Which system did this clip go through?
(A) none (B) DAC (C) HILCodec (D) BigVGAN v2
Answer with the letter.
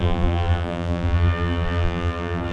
D